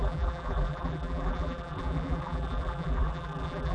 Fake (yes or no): yes